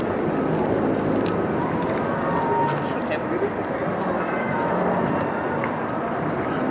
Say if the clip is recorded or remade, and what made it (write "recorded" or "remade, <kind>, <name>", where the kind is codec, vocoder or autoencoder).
recorded